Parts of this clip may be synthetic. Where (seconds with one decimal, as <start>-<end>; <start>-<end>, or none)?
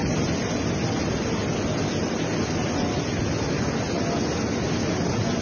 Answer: none